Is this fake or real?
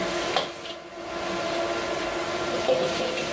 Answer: real